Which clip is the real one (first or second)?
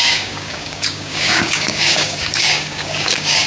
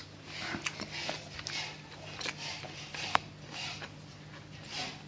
second